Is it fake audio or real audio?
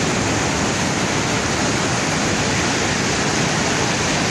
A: real